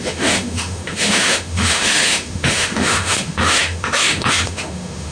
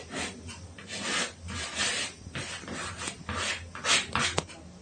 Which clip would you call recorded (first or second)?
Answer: second